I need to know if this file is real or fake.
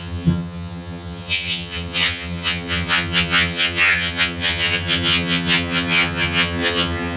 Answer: fake